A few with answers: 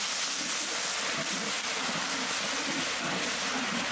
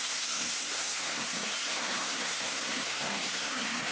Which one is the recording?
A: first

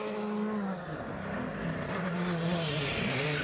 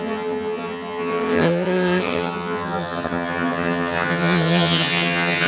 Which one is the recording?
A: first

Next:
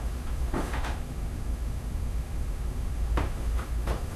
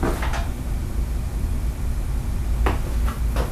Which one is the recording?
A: second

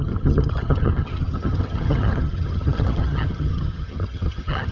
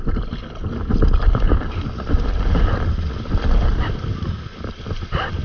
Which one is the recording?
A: second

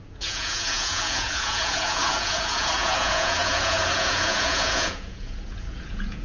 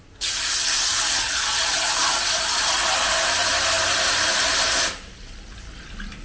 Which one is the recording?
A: second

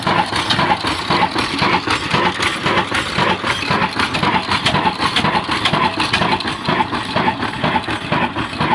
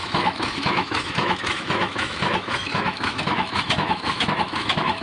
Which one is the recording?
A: first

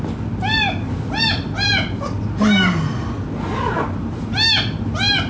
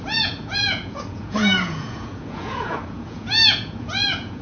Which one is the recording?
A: first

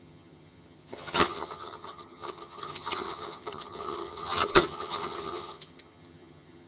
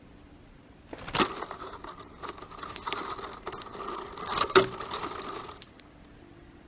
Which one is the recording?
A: second